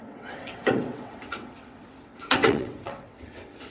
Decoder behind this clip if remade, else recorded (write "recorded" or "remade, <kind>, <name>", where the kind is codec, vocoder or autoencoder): remade, vocoder, WaveNeXt